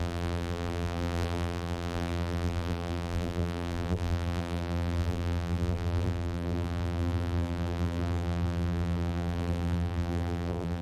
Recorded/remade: remade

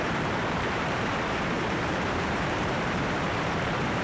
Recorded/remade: remade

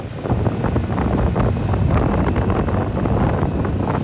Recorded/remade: recorded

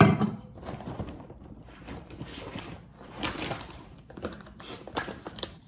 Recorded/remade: remade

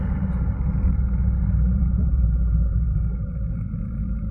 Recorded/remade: remade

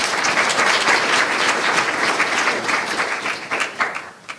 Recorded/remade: remade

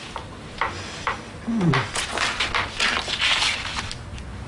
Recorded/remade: recorded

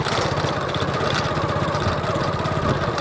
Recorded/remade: recorded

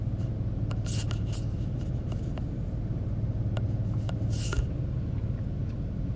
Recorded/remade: recorded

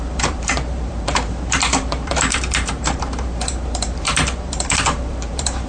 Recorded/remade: remade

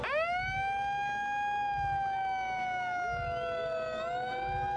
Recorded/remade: recorded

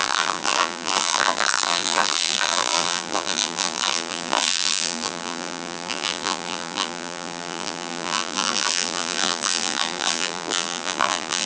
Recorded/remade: remade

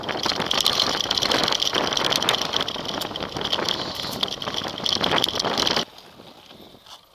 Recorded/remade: recorded